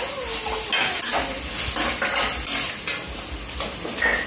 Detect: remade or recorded recorded